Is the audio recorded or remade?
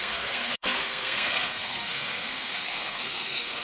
remade